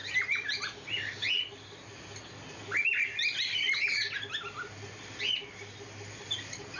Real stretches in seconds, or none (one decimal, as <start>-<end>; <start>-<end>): 0.0-6.8